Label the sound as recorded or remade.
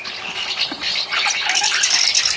recorded